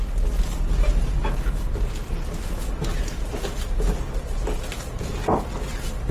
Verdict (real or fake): real